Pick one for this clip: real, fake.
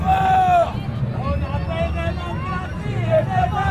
real